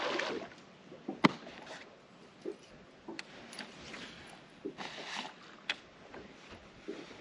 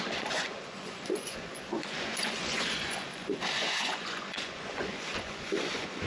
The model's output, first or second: second